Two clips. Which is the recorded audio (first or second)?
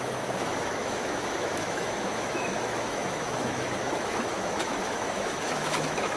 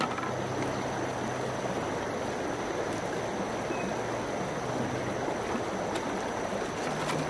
second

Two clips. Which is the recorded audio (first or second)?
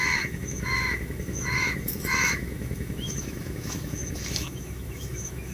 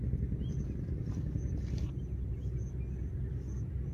second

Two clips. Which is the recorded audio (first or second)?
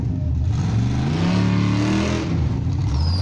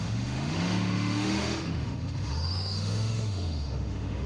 first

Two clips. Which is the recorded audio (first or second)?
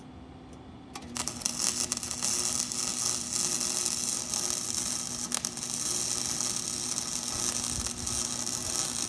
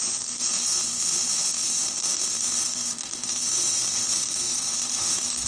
first